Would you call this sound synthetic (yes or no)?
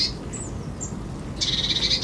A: no